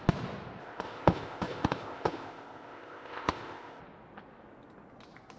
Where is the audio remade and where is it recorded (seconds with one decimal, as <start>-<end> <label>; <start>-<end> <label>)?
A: 0.0-0.6 recorded; 0.6-3.8 remade; 3.8-5.4 recorded